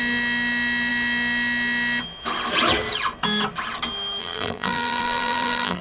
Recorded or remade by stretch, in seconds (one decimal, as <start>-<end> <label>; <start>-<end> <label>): 0.0-4.2 recorded; 4.2-5.8 remade